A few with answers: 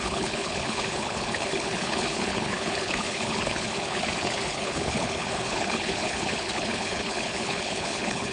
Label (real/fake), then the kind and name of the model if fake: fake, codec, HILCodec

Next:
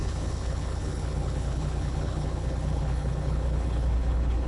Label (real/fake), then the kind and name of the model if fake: fake, codec, HILCodec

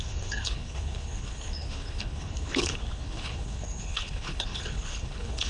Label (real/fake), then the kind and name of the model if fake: fake, codec, HILCodec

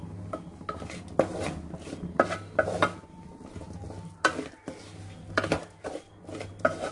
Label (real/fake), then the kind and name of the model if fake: real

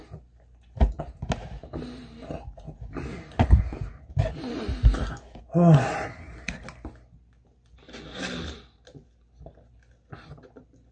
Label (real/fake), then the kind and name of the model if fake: real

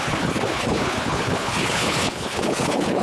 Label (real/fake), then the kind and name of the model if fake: fake, codec, HILCodec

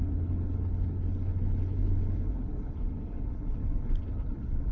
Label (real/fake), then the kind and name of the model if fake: fake, codec, HILCodec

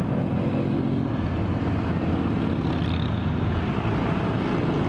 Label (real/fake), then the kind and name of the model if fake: real